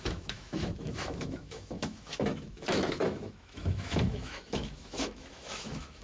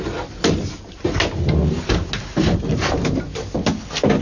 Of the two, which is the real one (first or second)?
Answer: second